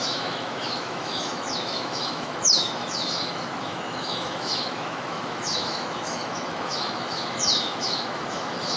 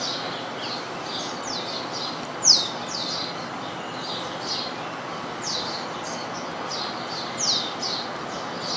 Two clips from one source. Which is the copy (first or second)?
first